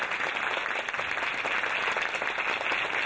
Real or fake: real